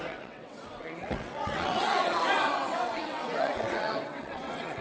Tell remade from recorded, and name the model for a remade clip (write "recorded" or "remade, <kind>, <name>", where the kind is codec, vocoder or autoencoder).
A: remade, vocoder, WaveNeXt